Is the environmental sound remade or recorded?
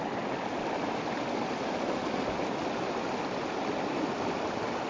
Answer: recorded